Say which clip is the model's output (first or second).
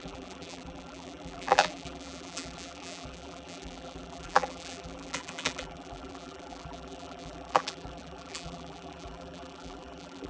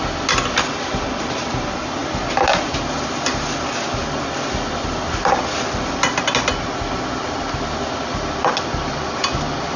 first